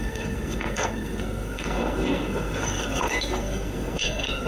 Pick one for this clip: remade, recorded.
remade